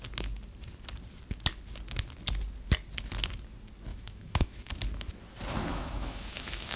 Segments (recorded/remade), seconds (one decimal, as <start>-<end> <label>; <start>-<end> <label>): 0.0-3.9 recorded; 3.9-4.7 remade; 4.7-5.7 recorded; 5.7-6.8 remade